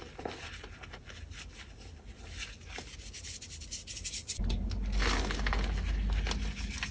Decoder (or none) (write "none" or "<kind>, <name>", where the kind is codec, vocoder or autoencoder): none